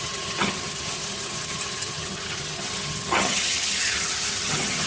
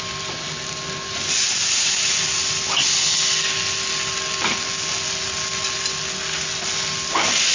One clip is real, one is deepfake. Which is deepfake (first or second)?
first